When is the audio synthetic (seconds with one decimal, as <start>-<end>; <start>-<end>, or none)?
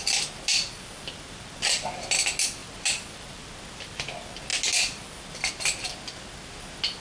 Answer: none